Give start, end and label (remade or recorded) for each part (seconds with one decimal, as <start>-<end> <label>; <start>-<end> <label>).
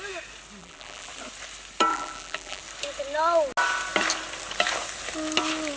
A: 0.0-0.6 recorded; 0.6-1.1 remade; 1.1-1.9 recorded; 1.9-2.6 remade; 2.6-5.8 recorded